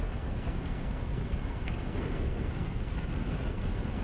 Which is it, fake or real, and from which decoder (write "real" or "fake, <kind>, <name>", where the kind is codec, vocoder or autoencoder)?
fake, codec, SNAC